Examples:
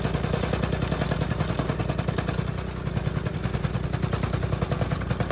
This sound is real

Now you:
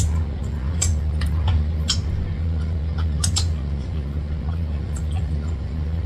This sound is fake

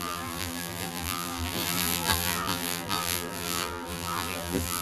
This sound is fake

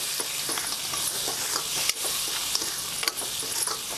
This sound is real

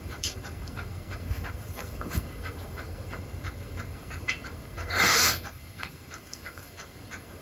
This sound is fake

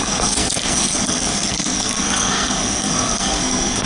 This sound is fake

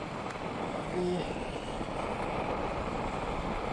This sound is real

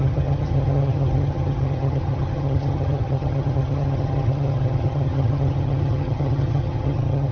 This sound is fake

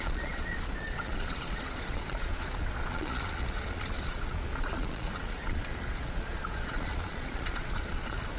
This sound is fake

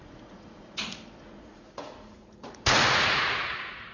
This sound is fake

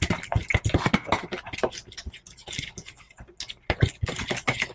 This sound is real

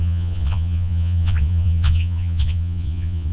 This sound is fake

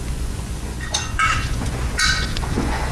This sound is fake